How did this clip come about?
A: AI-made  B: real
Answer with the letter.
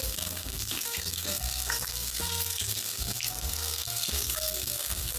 A